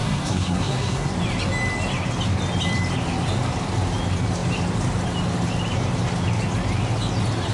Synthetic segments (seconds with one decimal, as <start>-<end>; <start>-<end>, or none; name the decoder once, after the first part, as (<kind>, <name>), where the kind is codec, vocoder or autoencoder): 0.0-1.1 (codec, SNAC)